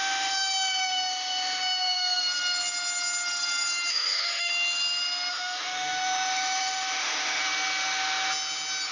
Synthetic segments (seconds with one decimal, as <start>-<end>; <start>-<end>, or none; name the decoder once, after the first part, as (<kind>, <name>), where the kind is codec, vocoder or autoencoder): 0.0-2.2 (autoencoder, DAC-VAE); 3.9-4.5; 5.3-7.4